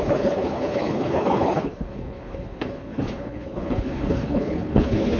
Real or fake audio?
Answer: fake